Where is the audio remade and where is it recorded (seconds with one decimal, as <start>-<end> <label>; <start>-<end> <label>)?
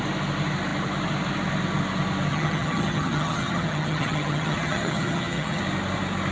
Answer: 0.0-2.3 recorded; 2.3-5.6 remade; 5.6-6.3 recorded